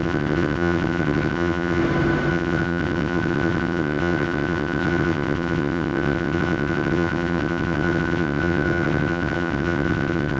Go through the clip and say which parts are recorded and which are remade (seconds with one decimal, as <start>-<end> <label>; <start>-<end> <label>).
0.0-1.8 remade; 1.8-2.3 recorded; 2.3-10.4 remade